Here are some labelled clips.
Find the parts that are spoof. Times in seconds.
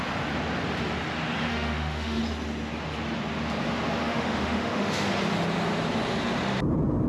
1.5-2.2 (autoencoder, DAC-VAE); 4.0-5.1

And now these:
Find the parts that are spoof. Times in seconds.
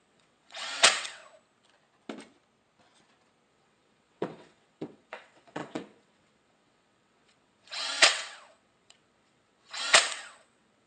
0.0-1.2 (vocoder, WaveNeXt); 3.5-10.9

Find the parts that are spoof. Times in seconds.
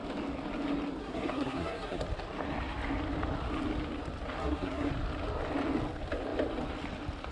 1.0-2.0 (codec, SNAC); 4.4-4.9